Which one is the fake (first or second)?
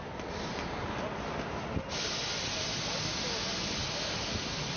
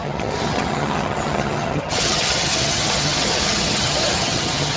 second